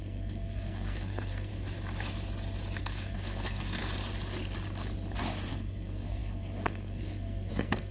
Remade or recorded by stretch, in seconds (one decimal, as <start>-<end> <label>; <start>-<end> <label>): 0.0-1.5 remade; 1.5-2.8 recorded; 2.8-3.8 remade; 3.8-5.5 recorded; 5.5-7.9 remade